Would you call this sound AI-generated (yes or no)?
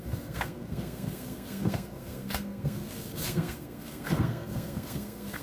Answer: yes